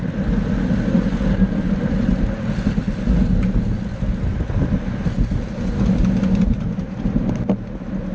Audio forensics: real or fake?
real